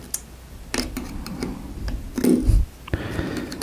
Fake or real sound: real